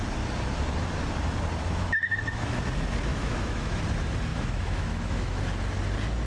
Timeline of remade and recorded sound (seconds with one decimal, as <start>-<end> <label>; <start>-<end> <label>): 0.0-1.6 recorded; 1.6-2.6 remade; 2.6-3.1 recorded; 3.1-3.8 remade; 3.8-4.3 recorded; 4.3-5.4 remade; 5.4-6.3 recorded